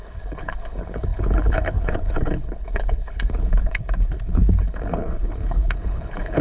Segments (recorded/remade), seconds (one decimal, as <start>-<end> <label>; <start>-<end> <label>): 0.0-6.4 remade